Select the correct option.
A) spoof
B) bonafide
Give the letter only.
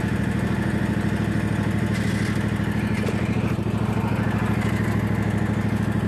B